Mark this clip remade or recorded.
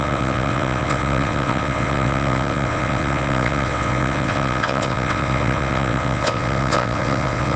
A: remade